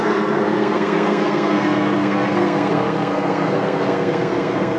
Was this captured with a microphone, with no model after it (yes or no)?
no